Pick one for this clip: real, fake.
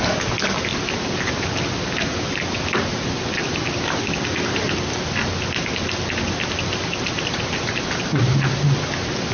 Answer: real